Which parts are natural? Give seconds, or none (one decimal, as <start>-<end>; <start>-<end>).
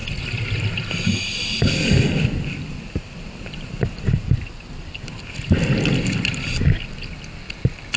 0.0-8.0